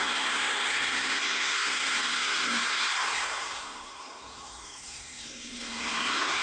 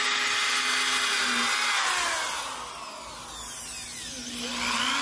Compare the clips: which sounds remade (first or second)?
first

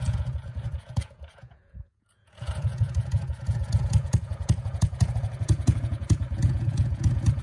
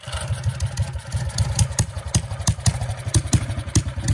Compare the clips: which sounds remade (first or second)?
first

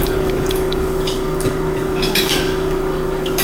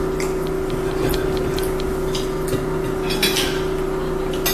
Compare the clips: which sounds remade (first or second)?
first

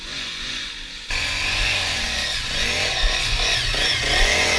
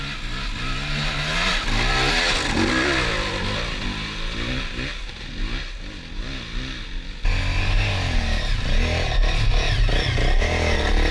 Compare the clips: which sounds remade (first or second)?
first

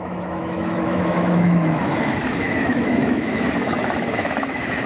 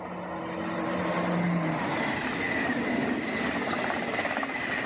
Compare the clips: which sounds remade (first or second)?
first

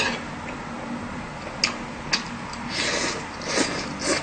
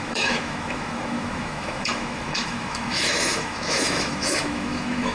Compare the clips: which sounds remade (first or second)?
second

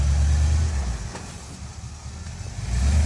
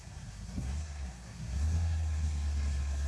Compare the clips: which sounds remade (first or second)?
second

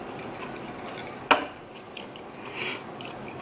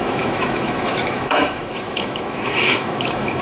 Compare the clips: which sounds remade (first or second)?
second